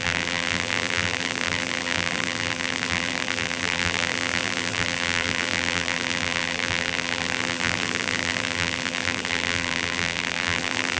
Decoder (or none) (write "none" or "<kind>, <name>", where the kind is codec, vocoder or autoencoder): vocoder, BigVGAN v2